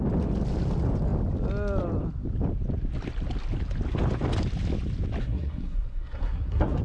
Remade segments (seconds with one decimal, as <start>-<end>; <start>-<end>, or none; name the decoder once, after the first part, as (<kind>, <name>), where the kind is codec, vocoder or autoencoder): 5.2-6.8 (codec, SNAC)

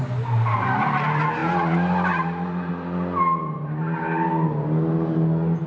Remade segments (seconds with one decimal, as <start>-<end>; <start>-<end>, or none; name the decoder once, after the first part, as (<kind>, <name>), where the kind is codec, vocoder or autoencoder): none